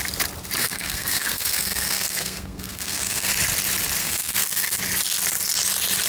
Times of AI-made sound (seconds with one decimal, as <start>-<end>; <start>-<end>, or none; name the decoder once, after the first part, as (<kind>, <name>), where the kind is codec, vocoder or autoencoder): 0.6-3.3 (codec, SNAC); 4.0-4.8